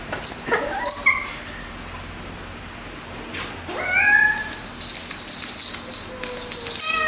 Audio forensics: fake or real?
real